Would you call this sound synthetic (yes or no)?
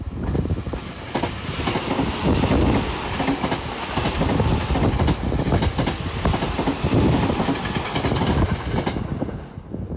no